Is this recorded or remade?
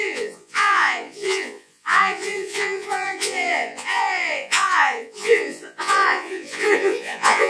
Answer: remade